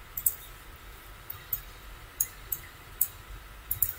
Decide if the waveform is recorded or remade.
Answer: remade